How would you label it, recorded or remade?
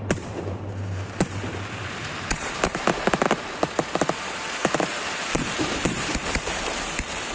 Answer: remade